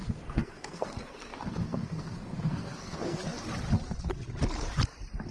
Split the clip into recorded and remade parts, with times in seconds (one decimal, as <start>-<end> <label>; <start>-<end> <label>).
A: 0.0-3.2 remade; 3.2-5.3 recorded